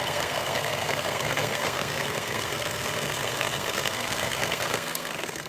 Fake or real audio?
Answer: fake